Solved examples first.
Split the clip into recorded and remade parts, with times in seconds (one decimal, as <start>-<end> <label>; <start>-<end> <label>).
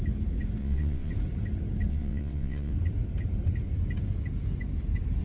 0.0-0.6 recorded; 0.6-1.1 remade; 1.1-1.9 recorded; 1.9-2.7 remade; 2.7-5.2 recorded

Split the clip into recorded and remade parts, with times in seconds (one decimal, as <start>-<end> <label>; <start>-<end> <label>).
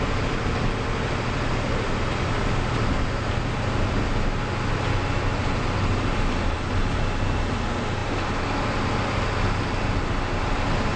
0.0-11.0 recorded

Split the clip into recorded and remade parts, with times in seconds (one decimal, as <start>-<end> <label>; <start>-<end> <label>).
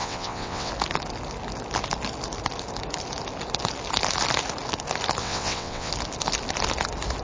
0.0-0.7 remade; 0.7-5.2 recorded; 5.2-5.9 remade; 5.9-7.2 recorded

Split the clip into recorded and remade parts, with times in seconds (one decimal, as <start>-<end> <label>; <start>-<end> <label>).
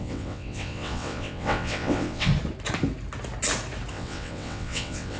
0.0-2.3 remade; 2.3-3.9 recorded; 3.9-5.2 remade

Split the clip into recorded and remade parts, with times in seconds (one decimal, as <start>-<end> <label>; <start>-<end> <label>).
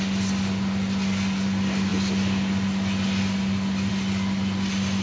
0.0-5.0 recorded